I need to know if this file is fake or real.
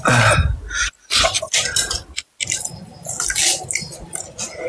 real